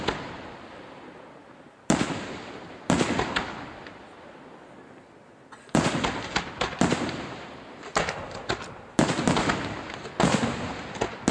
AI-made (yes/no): no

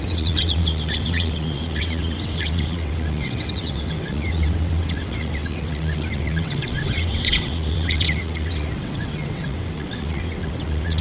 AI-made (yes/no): yes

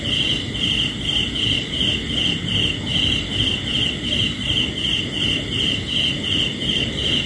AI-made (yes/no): no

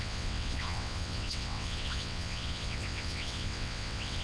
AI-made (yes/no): yes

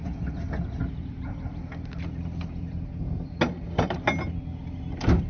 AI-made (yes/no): no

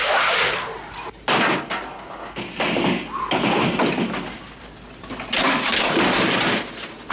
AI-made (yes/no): no